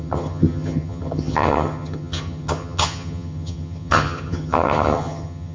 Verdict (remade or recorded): remade